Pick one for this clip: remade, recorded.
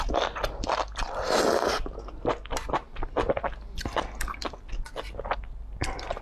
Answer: recorded